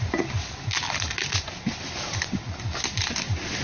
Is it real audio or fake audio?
real